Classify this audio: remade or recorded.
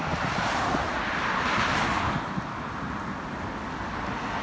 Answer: recorded